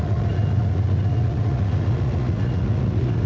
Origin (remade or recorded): remade